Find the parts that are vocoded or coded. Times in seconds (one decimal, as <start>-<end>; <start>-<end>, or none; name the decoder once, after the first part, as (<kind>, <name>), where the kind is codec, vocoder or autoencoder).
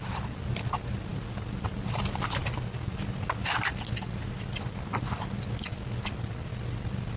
none